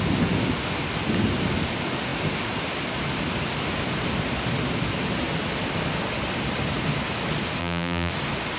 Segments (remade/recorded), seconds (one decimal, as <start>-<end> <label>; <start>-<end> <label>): 0.0-7.6 recorded; 7.6-8.1 remade; 8.1-8.6 recorded